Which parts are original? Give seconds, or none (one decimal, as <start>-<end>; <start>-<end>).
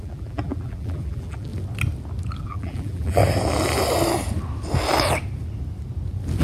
1.5-2.4; 3.2-6.4